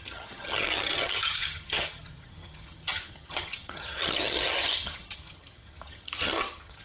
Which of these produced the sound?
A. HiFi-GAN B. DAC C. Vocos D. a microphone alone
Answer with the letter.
A